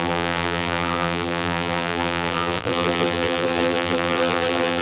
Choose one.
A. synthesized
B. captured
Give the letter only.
A